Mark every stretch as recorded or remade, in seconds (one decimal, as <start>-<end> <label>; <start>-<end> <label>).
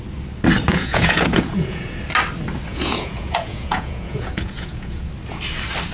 0.0-0.7 recorded; 0.7-2.0 remade; 2.0-2.7 recorded; 2.7-5.1 remade; 5.1-5.9 recorded